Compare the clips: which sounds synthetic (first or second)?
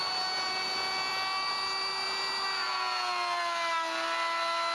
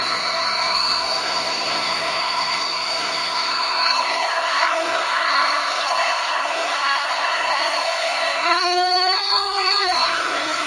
second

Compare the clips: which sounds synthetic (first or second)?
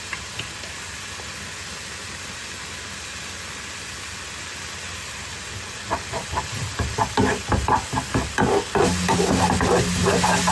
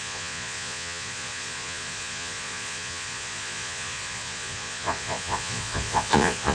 second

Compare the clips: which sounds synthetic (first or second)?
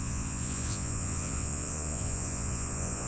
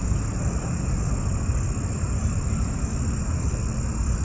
first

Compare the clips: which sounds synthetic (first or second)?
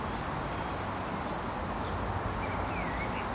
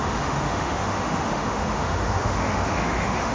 second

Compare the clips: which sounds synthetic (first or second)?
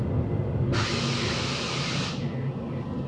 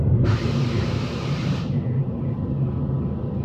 second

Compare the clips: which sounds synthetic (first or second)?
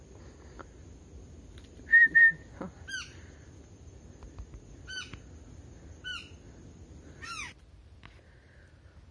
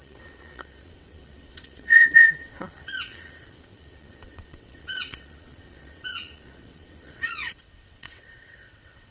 second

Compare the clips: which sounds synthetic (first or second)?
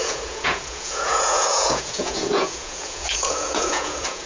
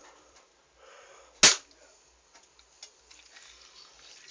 first